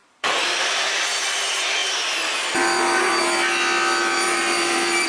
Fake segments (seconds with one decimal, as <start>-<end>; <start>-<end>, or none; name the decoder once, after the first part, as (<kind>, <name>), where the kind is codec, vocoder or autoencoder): 0.0-0.7 (vocoder, BigVGAN v2); 1.8-3.2; 4.0-5.1

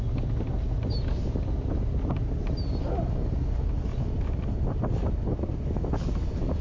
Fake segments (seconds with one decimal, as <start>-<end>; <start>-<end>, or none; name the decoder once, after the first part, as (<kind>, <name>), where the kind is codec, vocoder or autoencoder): 3.9-5.0 (vocoder, BigVGAN v2)

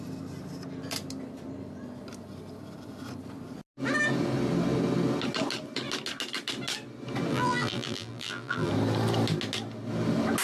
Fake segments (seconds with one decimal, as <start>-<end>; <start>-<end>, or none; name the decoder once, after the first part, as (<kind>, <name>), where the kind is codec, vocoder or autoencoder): 7.3-8.7 (vocoder, BigVGAN v2)